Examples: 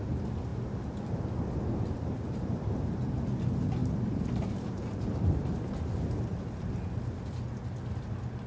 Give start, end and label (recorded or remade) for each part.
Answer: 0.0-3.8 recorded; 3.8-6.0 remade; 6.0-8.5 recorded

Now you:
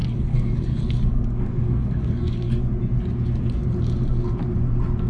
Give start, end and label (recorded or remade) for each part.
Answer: 0.0-2.6 remade; 2.6-5.1 recorded

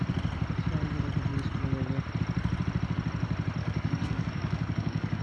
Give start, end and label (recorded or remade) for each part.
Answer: 0.0-3.6 recorded; 3.6-5.2 remade

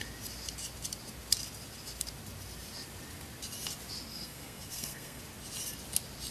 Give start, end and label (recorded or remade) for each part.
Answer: 0.0-4.1 recorded; 4.1-5.2 remade; 5.2-6.3 recorded

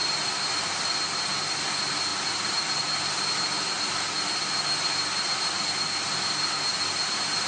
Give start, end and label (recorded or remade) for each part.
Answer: 0.0-7.5 recorded

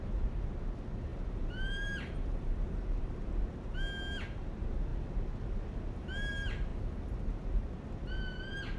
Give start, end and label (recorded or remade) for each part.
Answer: 0.0-1.1 recorded; 1.1-3.4 remade; 3.4-6.7 recorded; 6.7-7.7 remade; 7.7-8.8 recorded